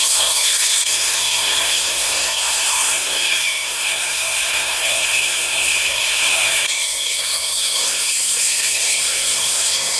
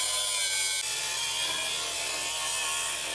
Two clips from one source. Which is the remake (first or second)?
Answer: first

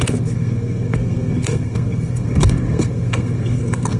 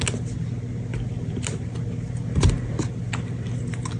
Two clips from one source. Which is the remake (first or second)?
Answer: first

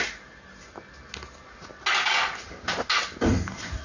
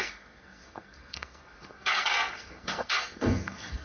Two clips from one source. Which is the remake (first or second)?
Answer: second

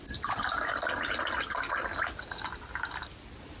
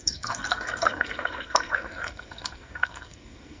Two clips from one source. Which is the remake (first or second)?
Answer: second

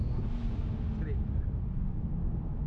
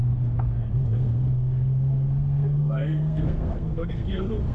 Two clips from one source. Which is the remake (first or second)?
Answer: second